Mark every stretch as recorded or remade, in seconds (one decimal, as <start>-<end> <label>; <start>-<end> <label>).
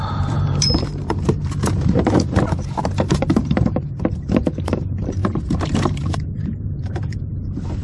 0.0-7.8 remade